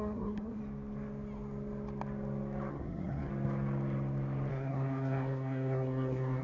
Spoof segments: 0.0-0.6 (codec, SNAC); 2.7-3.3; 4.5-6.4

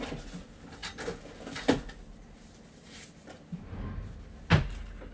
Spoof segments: none

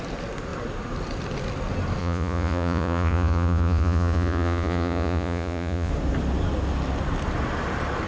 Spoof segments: 2.0-5.9 (vocoder, Vocos)

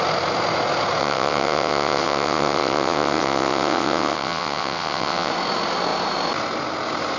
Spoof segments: 1.0-5.3 (vocoder, WaveNeXt)

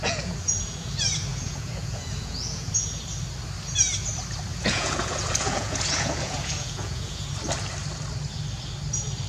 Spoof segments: 0.0-0.9 (vocoder, Vocos); 1.3-2.7; 4.5-7.3

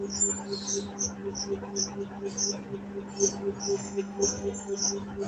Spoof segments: 3.7-4.8 (codec, SNAC)

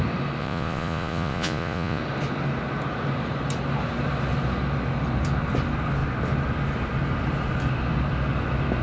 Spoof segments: 0.4-2.0 (vocoder, Vocos)